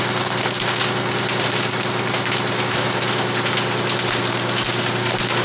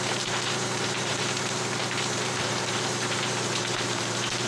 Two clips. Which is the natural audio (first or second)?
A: first